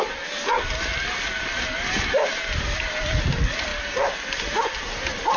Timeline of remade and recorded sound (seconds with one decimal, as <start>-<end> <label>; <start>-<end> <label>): 0.0-5.4 recorded